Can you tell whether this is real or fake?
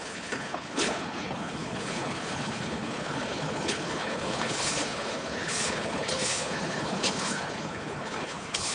fake